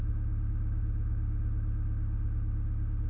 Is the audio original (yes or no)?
yes